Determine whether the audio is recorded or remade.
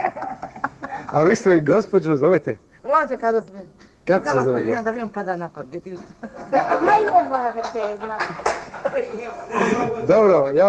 remade